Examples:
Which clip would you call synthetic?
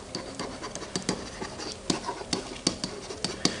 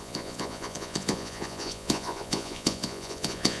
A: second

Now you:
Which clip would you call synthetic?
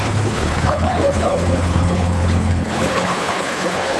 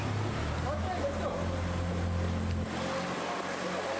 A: first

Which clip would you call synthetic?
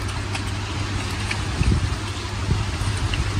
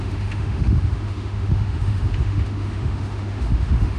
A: second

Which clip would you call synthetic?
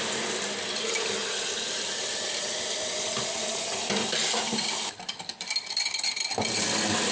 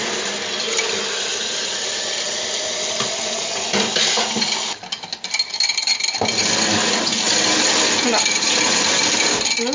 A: first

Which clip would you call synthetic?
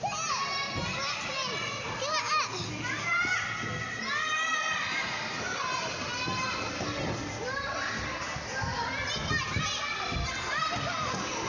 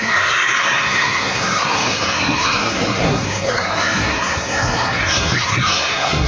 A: second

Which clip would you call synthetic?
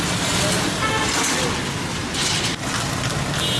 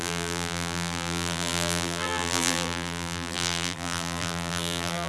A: second